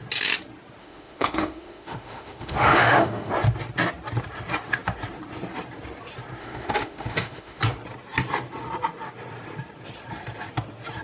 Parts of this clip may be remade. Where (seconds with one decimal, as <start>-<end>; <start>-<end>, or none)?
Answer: 0.8-3.3; 6.4-7.6